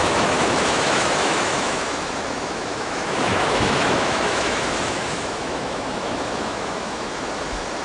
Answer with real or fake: fake